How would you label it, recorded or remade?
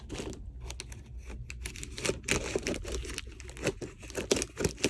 recorded